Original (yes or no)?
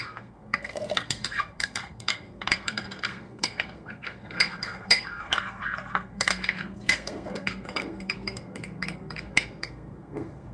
no